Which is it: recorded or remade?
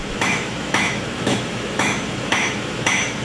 remade